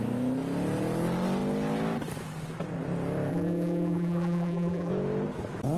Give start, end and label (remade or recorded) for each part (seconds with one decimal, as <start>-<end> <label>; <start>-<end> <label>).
0.0-3.3 recorded; 3.3-4.9 remade; 4.9-5.8 recorded